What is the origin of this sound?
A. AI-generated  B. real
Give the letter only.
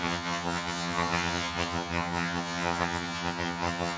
A